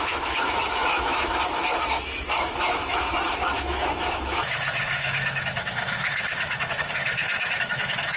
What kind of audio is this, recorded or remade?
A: remade